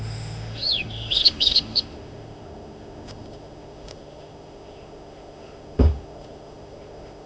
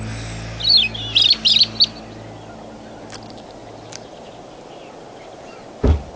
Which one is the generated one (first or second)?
first